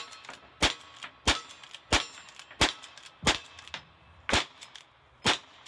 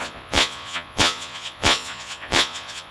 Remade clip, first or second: second